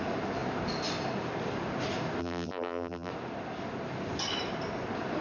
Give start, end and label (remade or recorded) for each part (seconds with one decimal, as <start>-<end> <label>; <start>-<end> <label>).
0.0-2.2 recorded; 2.2-3.1 remade; 3.1-5.2 recorded